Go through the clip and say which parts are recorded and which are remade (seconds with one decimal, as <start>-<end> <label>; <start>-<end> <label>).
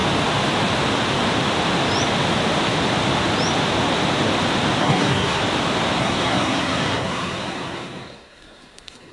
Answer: 0.0-4.8 recorded; 4.8-5.4 remade; 5.4-6.0 recorded; 6.0-9.1 remade